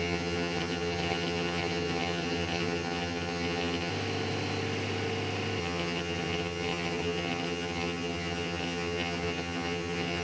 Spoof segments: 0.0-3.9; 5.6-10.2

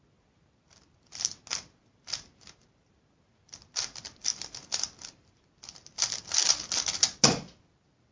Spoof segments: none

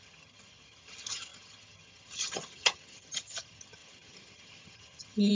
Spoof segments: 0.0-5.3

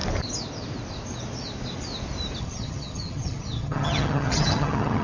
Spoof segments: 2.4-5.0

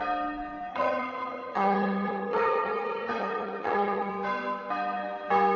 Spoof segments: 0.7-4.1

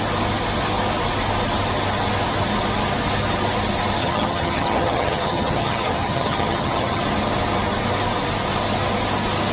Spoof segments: 4.0-7.0

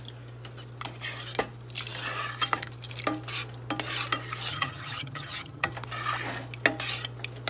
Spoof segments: 4.5-5.7